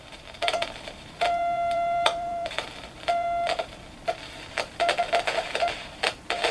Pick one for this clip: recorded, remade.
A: remade